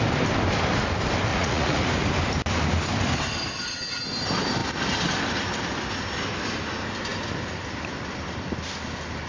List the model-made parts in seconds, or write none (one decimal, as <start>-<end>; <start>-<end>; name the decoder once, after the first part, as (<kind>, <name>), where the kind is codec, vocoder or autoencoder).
1.3-1.8 (vocoder, Vocos)